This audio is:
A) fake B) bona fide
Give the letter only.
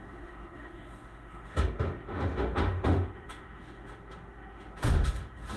A